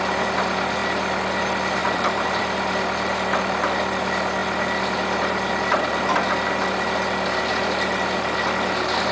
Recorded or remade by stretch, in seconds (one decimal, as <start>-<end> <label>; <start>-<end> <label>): 0.0-1.8 recorded; 1.8-2.4 remade; 2.4-9.1 recorded